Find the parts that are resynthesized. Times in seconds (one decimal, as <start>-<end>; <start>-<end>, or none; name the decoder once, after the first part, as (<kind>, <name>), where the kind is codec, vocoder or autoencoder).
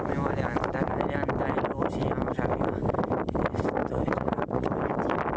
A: 3.8-4.7 (vocoder, Vocos)